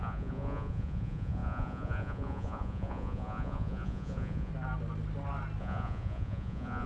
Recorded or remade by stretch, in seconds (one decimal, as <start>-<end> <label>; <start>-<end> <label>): 0.0-4.5 remade; 4.5-5.6 recorded; 5.6-6.9 remade